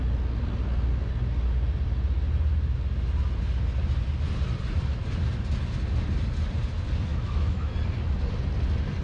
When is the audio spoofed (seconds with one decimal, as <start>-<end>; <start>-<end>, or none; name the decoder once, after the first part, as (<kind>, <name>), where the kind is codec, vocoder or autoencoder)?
7.1-7.7 (autoencoder, DAC-VAE)